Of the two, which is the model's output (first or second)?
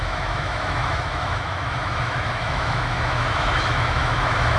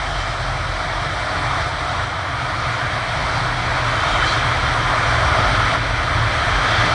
first